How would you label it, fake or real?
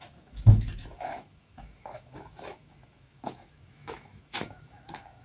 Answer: fake